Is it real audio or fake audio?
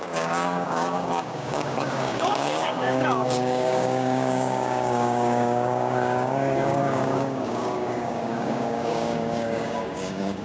fake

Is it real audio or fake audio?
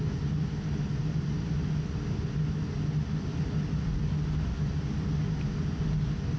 real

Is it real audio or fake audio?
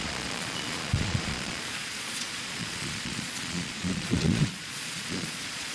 fake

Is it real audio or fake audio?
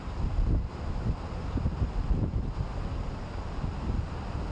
real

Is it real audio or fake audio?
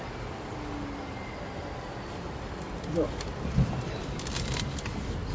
fake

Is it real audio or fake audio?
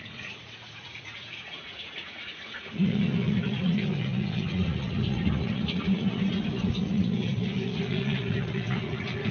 fake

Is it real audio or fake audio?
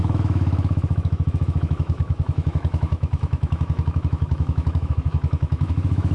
fake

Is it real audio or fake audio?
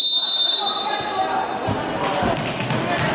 real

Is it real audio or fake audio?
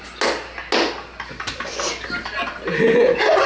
real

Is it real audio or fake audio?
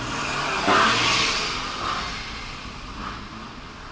real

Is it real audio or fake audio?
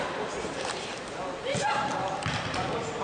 fake